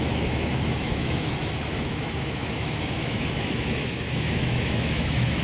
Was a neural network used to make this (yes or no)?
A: yes